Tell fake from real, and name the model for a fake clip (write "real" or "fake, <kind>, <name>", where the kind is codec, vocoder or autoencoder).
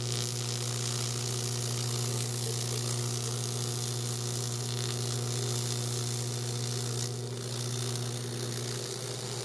real